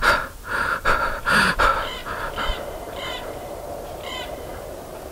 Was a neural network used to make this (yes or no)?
yes